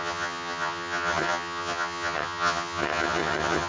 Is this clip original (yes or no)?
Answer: no